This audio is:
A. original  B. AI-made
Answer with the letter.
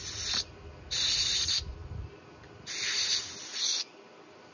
A